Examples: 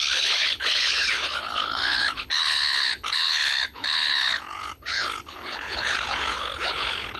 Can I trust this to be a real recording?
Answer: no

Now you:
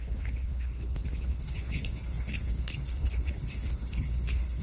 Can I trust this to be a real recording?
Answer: no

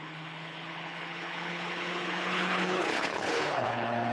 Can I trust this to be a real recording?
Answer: no